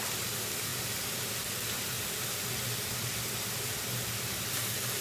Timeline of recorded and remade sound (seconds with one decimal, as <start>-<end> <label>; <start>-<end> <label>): 0.0-5.0 recorded